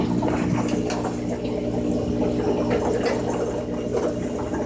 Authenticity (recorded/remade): recorded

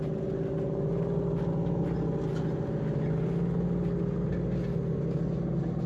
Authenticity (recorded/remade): recorded